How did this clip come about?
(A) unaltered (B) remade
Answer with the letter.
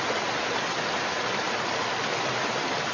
A